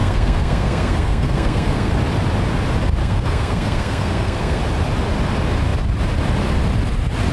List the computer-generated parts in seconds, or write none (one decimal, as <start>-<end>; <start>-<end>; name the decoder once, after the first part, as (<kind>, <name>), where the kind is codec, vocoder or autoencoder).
0.0-1.9 (codec, SNAC); 3.0-4.6